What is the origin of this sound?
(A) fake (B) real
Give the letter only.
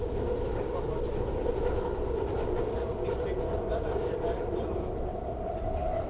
B